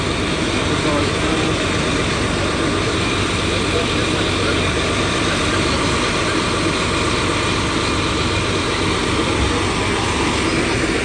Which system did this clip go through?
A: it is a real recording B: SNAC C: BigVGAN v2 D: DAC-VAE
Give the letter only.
A